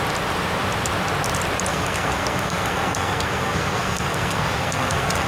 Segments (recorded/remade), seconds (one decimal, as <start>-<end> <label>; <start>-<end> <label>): 0.0-1.7 recorded; 1.7-5.3 remade